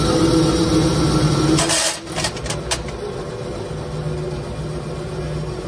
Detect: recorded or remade recorded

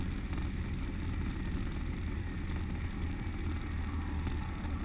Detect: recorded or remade recorded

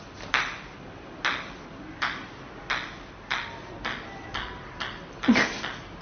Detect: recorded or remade recorded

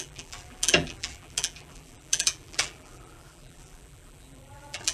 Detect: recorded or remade remade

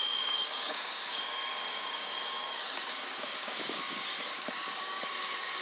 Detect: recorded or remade remade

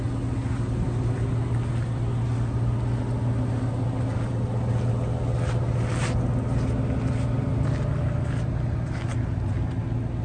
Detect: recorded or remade recorded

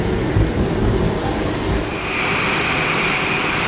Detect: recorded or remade recorded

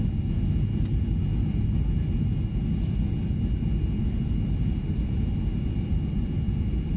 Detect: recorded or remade recorded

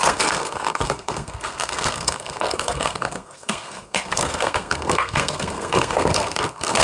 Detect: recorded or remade remade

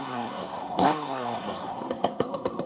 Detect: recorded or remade remade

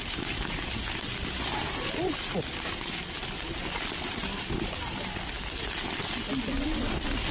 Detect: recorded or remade recorded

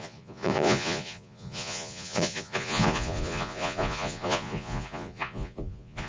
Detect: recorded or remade remade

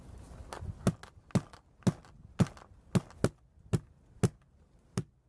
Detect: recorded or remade recorded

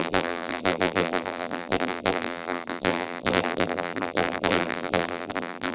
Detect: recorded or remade remade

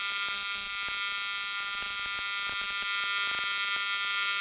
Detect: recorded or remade recorded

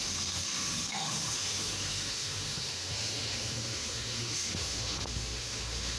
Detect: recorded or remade remade